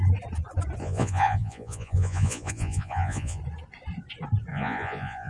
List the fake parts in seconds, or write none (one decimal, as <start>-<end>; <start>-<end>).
0.8-3.4; 4.5-5.3